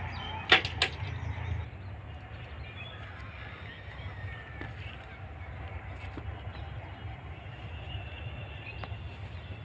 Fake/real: real